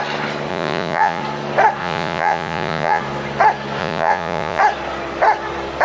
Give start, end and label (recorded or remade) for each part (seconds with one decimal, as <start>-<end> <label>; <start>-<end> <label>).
0.0-0.5 recorded; 0.5-1.2 remade; 1.2-1.8 recorded; 1.8-3.0 remade; 3.0-3.8 recorded; 3.8-4.6 remade; 4.6-5.8 recorded